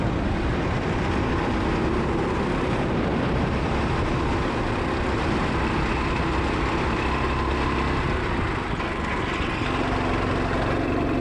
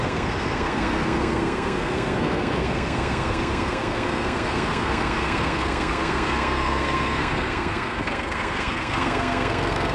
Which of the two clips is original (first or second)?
first